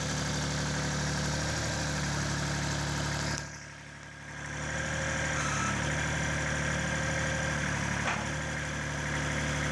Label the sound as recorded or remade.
recorded